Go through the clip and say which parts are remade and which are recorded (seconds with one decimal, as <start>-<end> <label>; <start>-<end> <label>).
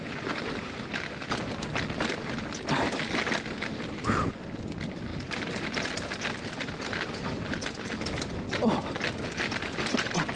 0.0-10.4 recorded